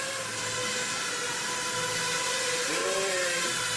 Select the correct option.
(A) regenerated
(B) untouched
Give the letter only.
A